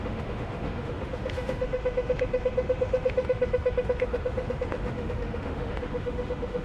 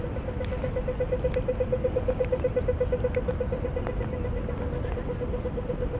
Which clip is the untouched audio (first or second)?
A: second